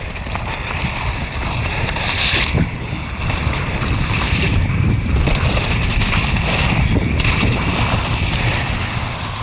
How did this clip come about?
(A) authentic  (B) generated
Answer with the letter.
B